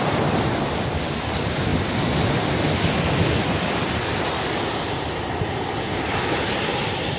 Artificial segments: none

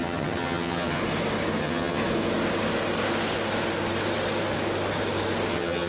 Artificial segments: 0.0-1.0; 1.6-2.0; 5.5-5.9

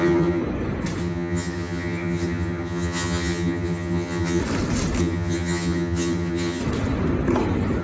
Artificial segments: 0.0-0.4; 1.0-4.4; 5.0-6.6

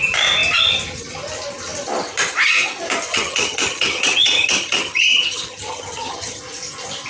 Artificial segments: 3.1-6.4